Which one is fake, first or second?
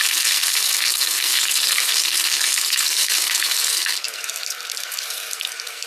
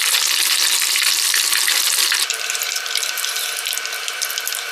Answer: first